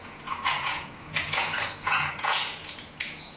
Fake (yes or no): yes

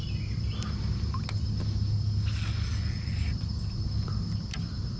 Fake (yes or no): no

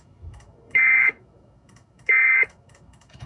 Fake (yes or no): yes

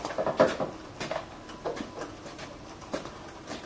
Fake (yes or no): no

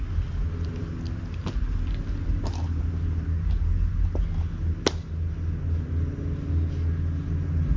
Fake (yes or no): no